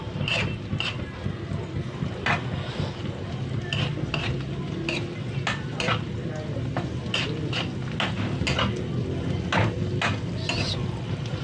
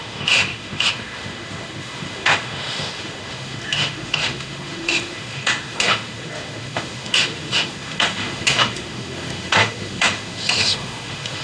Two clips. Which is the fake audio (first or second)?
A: second